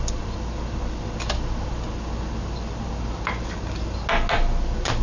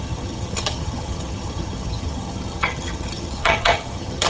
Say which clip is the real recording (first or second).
first